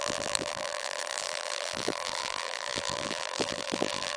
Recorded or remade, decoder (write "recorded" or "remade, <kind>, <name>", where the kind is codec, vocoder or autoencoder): remade, vocoder, BigVGAN v2